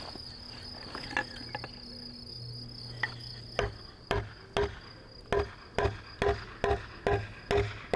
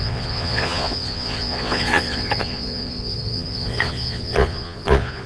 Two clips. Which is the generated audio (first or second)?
second